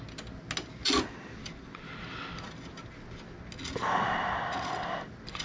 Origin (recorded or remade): recorded